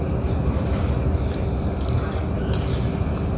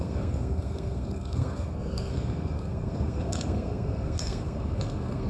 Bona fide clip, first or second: first